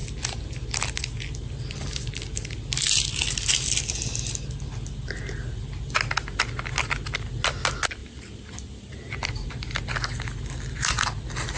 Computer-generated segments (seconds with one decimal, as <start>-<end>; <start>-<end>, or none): none

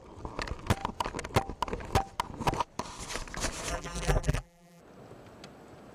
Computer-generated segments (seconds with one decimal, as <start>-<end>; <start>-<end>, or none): 3.7-4.8

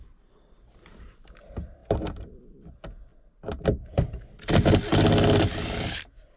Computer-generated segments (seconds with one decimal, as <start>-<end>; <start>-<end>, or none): none

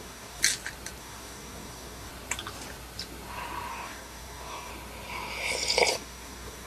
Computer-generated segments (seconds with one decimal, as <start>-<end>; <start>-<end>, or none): 0.0-0.4; 1.0-2.1; 3.7-4.7; 5.9-6.7

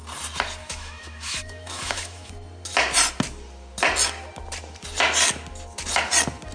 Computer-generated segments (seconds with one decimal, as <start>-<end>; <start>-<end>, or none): 0.6-2.3

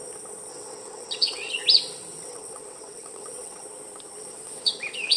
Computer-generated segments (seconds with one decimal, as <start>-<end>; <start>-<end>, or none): 0.5-1.5; 2.3-3.6; 4.2-5.2

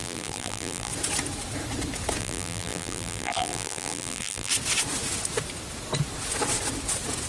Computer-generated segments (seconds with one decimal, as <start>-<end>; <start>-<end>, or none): 0.0-0.9; 2.2-4.5